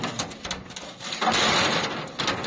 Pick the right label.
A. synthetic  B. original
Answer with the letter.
B